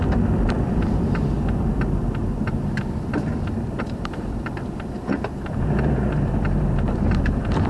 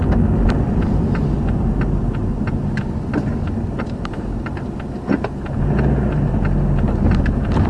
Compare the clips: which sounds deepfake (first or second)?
first